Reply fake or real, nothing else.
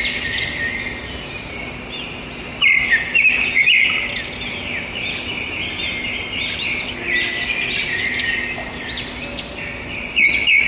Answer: real